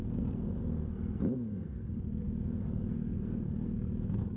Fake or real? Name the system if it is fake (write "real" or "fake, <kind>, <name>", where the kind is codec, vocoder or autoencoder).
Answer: fake, codec, SNAC